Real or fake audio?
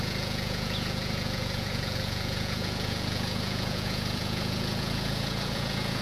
fake